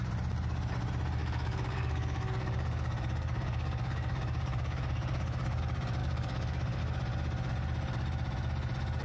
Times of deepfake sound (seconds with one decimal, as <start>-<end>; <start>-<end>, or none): 1.2-5.6; 6.0-6.8